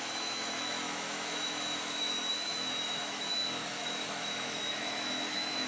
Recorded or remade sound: remade